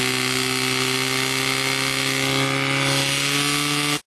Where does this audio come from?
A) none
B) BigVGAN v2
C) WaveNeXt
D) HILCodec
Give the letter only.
A